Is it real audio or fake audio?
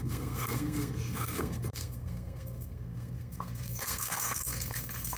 fake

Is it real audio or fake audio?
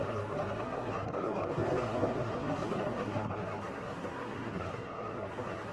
fake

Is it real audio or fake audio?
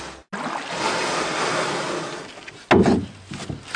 real